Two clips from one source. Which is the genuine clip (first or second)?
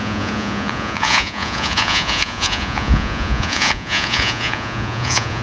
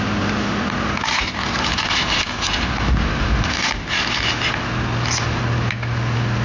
second